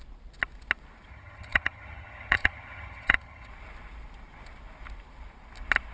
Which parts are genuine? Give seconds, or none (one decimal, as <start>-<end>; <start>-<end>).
0.0-1.1; 3.5-5.9